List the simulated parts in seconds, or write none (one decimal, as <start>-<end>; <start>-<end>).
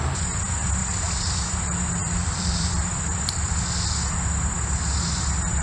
0.8-4.1